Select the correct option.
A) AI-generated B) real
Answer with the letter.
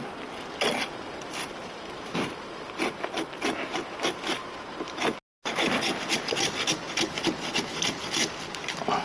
B